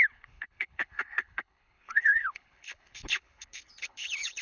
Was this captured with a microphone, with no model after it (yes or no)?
no